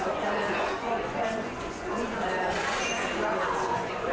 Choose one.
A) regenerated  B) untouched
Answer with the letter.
A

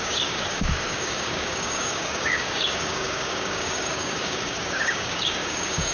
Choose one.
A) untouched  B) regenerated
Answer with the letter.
B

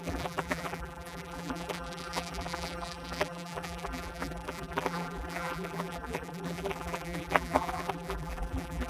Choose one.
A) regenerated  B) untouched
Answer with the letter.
A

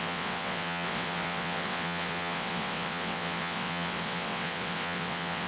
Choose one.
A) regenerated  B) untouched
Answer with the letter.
A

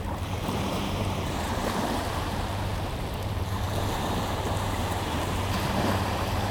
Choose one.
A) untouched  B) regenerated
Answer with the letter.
B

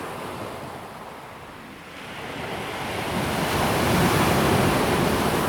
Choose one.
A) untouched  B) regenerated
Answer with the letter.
A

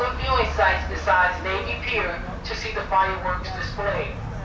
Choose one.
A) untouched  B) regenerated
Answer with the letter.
A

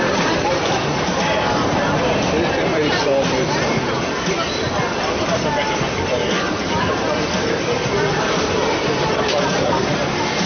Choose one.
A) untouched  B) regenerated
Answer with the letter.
B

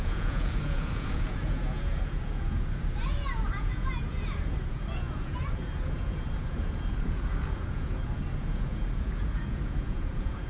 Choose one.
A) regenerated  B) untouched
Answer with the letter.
A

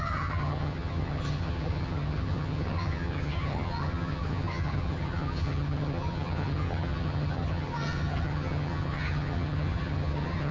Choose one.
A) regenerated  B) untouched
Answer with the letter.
A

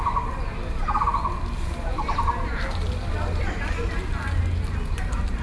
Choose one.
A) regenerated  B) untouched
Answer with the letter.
B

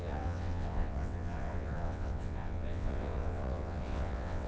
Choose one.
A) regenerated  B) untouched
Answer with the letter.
A